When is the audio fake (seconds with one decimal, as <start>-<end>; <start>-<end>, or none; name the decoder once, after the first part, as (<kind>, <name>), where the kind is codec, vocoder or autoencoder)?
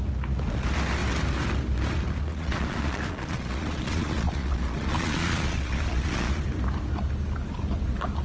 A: 2.3-6.4 (vocoder, Vocos)